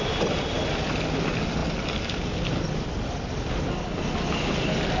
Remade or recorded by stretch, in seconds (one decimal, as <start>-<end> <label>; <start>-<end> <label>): 0.0-5.0 recorded